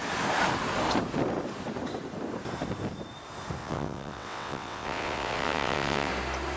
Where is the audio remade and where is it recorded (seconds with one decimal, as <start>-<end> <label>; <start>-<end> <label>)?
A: 0.0-3.6 recorded; 3.6-6.1 remade; 6.1-6.6 recorded